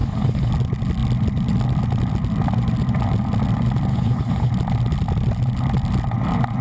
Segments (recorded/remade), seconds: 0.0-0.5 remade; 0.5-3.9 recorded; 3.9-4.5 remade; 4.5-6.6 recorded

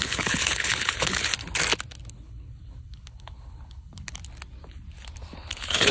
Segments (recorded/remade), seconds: 0.0-1.3 remade; 1.3-2.1 recorded; 2.1-4.1 remade; 4.1-5.3 recorded; 5.3-5.9 remade

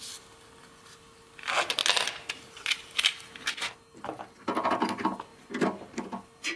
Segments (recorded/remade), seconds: 0.0-6.6 recorded